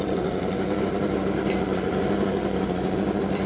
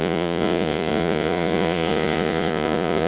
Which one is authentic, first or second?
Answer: first